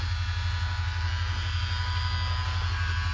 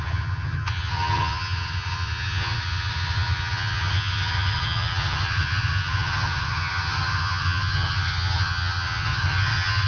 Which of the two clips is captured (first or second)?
first